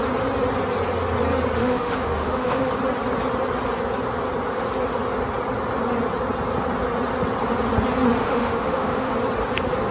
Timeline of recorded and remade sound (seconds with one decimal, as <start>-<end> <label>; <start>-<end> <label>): 0.0-1.6 recorded; 1.6-2.7 remade; 2.7-8.2 recorded; 8.2-9.1 remade; 9.1-9.9 recorded